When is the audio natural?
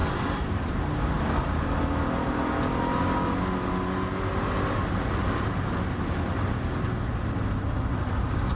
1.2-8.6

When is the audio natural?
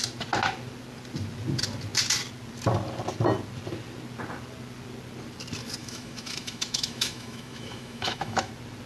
0.0-5.8; 8.5-8.9